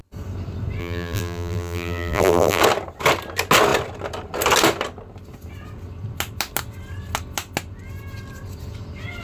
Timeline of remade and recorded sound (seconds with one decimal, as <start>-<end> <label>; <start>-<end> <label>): 0.0-0.8 recorded; 0.8-2.6 remade; 2.6-9.2 recorded